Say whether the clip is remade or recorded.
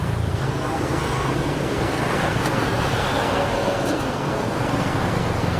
remade